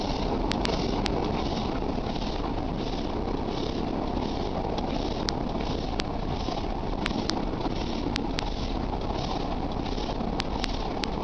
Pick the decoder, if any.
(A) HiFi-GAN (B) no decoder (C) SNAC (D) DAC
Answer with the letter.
B